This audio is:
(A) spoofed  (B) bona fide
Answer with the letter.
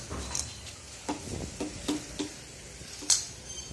B